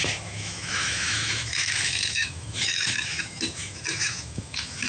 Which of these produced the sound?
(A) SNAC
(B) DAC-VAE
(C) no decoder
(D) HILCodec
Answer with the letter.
B